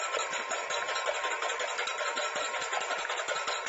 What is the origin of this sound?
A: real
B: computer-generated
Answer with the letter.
A